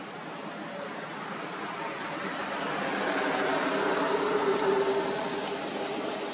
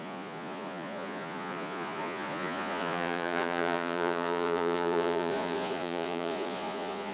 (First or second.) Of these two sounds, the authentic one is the first